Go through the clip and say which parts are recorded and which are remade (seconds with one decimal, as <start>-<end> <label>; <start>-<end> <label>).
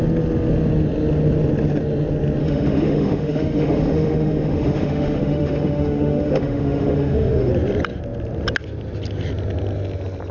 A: 0.0-2.4 recorded; 2.4-7.5 remade; 7.5-10.3 recorded